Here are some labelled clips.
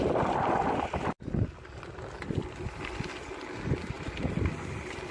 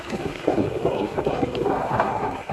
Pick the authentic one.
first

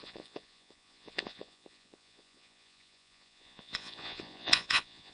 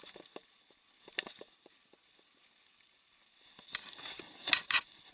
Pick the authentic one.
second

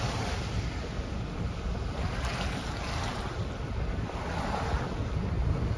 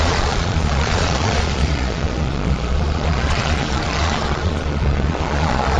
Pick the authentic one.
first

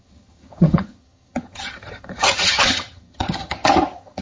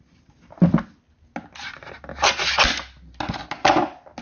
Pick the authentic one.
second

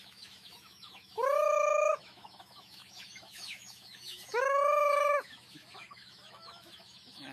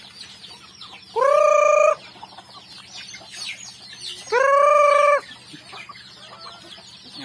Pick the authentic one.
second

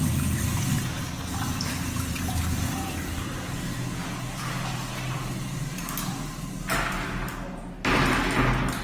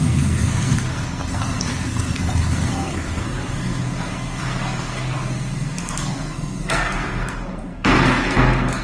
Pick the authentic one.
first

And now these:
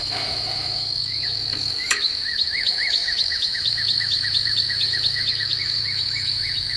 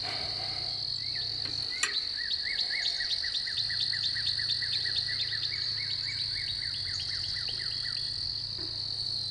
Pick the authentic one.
second